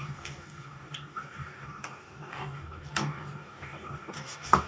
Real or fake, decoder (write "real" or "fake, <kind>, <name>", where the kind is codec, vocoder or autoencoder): fake, codec, DAC